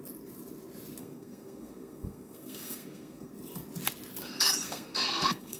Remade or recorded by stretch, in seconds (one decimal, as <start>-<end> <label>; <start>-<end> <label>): 0.0-1.0 recorded; 1.0-3.3 remade; 3.3-4.2 recorded; 4.2-5.6 remade